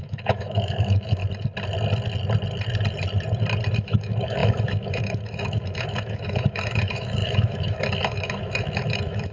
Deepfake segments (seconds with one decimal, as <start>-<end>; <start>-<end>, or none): 0.0-1.2; 3.8-9.3